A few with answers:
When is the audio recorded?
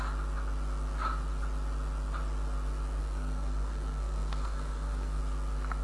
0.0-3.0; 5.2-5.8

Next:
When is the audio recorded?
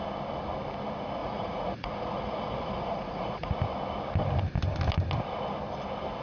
0.0-1.2; 3.5-6.2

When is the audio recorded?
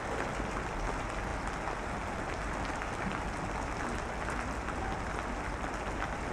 0.0-6.3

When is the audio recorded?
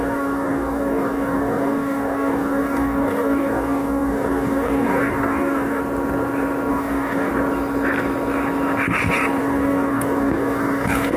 5.8-6.7; 7.3-9.4